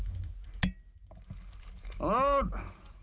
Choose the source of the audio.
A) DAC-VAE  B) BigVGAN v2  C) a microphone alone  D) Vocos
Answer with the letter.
C